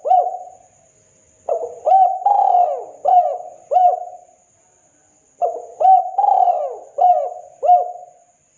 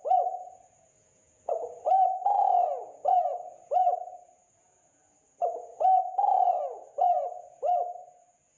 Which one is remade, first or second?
second